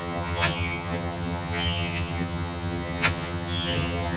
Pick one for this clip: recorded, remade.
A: remade